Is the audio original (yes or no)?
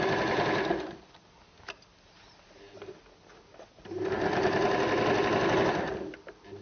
yes